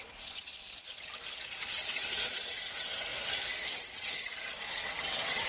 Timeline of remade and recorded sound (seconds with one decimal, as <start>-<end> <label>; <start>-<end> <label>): 0.0-1.1 remade; 1.1-1.7 recorded; 1.7-3.1 remade; 3.1-3.6 recorded; 3.6-4.3 remade; 4.3-5.0 recorded; 5.0-5.5 remade